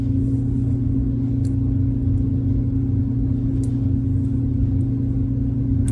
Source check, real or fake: real